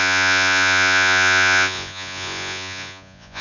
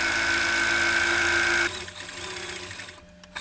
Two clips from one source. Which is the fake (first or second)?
first